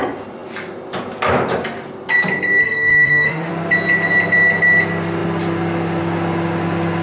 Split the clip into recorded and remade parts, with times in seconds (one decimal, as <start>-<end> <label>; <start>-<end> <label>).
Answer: 0.0-2.6 recorded; 2.6-3.5 remade; 3.5-7.0 recorded